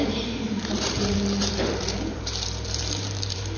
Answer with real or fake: fake